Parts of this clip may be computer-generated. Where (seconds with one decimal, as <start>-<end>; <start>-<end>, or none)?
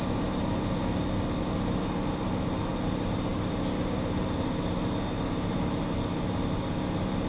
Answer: none